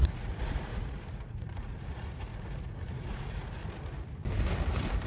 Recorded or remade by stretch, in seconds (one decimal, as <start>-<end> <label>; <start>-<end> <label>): 0.0-3.6 remade; 3.6-5.1 recorded